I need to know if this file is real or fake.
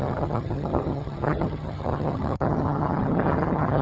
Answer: fake